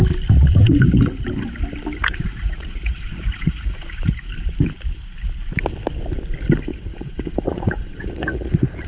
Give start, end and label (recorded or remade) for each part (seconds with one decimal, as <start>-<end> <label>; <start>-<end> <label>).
0.0-0.6 recorded; 0.6-1.2 remade; 1.2-2.0 recorded; 2.0-4.3 remade; 4.3-6.7 recorded; 6.7-8.9 remade